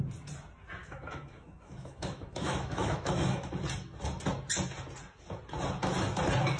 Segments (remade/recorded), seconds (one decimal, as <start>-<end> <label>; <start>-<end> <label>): 0.0-0.8 recorded; 0.8-3.5 remade; 3.5-6.6 recorded